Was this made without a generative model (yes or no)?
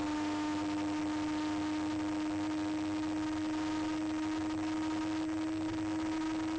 yes